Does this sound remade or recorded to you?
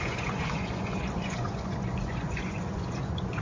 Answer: remade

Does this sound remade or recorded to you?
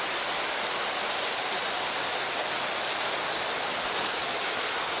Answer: recorded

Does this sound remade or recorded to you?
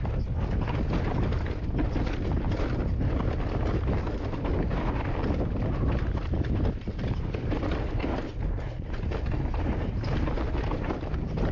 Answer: recorded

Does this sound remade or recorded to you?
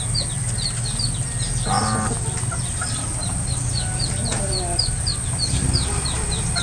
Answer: recorded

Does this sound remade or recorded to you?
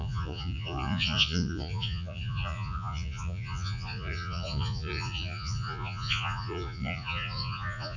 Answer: remade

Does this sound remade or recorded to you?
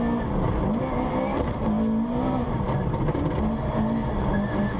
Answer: recorded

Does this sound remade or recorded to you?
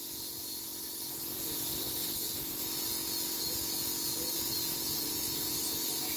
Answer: remade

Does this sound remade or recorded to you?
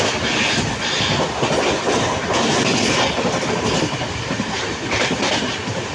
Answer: recorded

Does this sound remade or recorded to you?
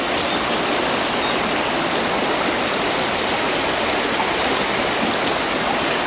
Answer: recorded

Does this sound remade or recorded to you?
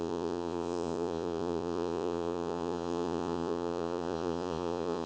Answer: remade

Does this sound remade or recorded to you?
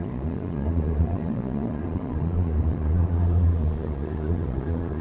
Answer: remade